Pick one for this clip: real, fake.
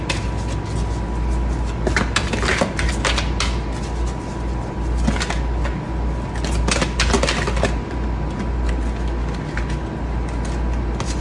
real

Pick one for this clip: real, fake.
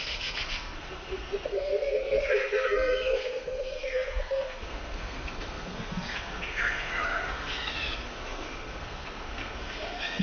fake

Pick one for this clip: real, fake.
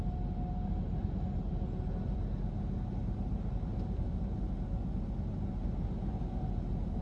real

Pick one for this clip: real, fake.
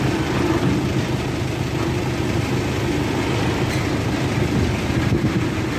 real